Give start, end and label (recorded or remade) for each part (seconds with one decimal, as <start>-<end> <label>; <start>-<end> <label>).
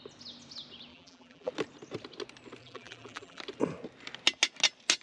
0.0-0.9 recorded; 0.9-1.5 remade; 1.5-2.6 recorded; 2.6-3.4 remade; 3.4-5.0 recorded